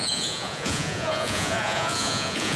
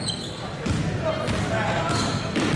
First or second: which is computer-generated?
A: first